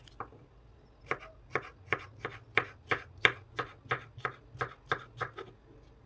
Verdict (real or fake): real